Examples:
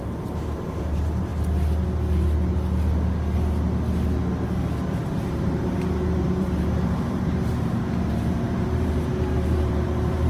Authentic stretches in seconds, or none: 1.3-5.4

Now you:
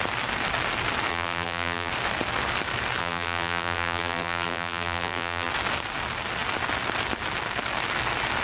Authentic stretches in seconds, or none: 0.0-1.1; 1.9-3.0; 5.5-8.4

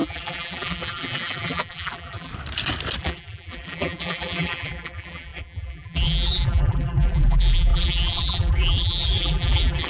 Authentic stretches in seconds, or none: 2.3-3.0

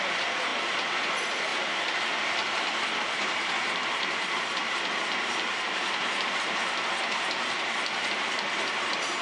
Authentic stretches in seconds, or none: 0.5-1.0

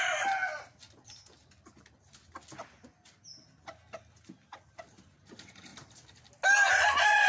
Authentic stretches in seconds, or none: 0.4-4.7; 5.7-7.3

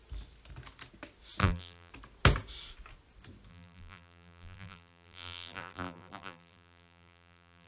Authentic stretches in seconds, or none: 0.0-1.4; 1.9-3.5